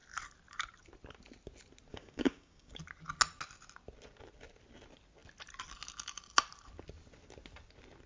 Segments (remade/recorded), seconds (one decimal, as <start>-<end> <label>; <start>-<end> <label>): 0.0-1.9 recorded; 1.9-2.8 remade; 2.8-8.1 recorded